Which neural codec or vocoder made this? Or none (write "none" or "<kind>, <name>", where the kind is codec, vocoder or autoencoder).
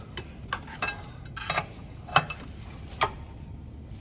none